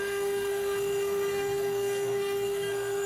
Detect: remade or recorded remade